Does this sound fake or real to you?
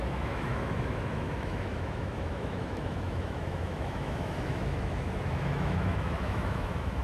fake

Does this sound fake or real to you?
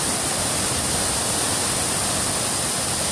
real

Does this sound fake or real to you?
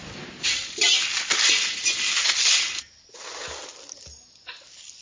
real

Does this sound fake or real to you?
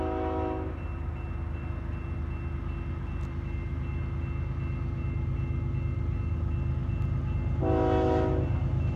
real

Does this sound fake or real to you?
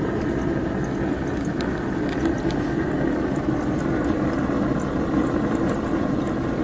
real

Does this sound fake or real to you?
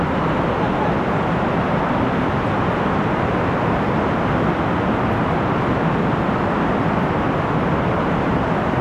real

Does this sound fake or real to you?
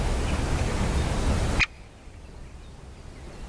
real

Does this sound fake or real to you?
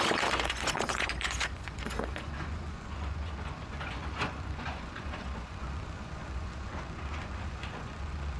fake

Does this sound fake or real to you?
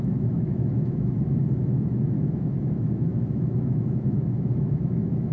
fake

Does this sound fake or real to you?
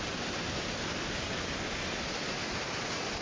real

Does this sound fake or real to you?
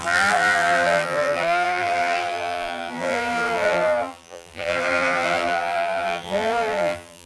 fake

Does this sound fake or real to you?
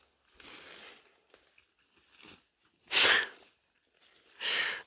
real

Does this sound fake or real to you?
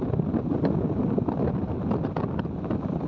real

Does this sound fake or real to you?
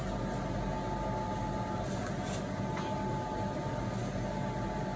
real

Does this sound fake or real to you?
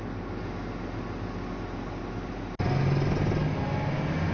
real